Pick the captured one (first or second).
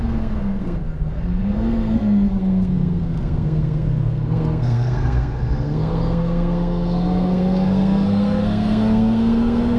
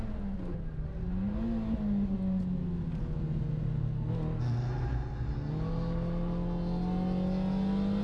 second